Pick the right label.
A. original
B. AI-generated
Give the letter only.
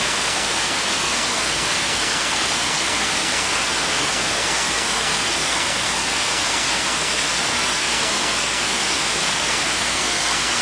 B